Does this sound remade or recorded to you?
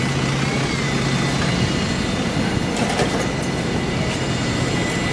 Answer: recorded